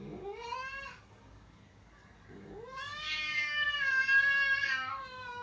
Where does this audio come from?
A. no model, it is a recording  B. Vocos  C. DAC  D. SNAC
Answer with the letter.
C